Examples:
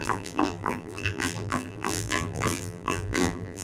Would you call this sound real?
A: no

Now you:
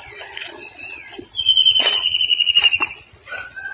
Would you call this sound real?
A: no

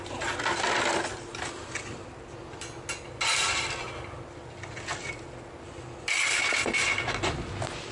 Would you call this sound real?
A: yes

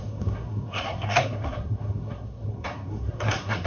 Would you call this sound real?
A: no